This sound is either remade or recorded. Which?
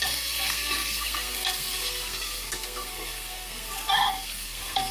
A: remade